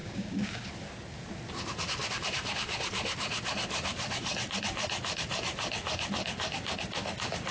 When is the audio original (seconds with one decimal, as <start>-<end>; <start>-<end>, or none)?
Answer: 0.6-7.5